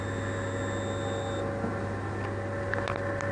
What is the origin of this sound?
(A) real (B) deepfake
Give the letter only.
A